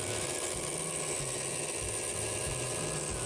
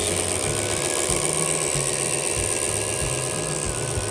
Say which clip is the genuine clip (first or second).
second